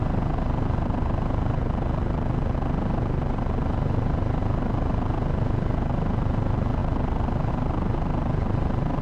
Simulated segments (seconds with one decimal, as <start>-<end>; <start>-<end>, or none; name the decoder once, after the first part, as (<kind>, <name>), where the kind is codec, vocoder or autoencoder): none